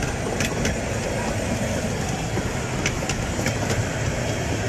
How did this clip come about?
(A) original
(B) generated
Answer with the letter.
A